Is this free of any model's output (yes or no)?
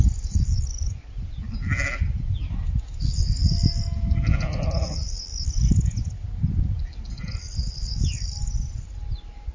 yes